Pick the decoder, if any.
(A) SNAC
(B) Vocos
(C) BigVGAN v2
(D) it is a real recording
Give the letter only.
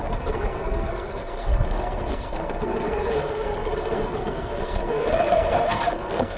A